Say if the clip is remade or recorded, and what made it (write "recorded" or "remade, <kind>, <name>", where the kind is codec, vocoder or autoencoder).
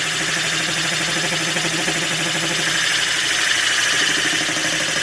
recorded